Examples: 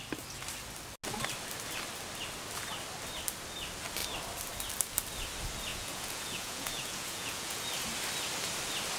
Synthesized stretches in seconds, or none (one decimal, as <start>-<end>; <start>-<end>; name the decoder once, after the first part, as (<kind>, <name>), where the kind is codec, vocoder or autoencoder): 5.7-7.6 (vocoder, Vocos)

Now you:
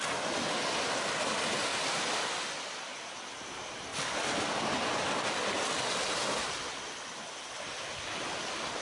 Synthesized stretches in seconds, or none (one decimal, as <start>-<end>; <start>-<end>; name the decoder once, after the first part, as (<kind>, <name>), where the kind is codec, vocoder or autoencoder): none

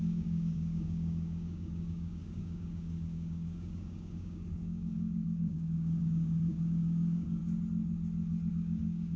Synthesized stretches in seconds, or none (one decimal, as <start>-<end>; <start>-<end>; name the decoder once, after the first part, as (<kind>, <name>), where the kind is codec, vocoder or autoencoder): 0.0-7.4 (codec, DAC); 8.5-9.2

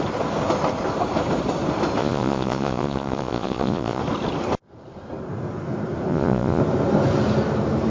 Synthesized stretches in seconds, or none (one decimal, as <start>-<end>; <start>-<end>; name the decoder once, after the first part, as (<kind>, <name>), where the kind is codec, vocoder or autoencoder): 2.0-4.0 (vocoder, Vocos); 6.1-6.6